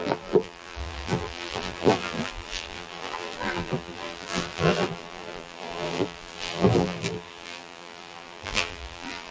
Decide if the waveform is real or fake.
fake